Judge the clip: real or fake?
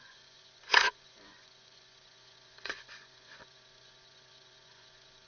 fake